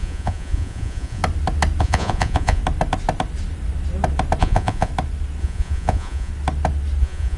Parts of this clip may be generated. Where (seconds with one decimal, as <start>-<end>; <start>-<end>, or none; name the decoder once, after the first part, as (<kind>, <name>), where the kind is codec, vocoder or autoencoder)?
0.0-1.2 (vocoder, Vocos); 1.8-2.6; 4.4-4.9; 5.4-6.3; 7.0-7.4